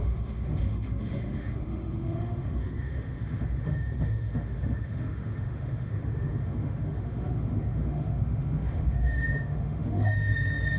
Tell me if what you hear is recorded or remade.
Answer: remade